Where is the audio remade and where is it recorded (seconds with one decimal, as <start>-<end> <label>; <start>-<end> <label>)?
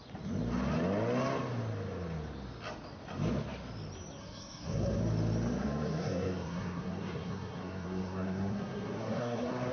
0.0-4.2 recorded; 4.2-5.0 remade; 5.0-5.6 recorded; 5.6-9.7 remade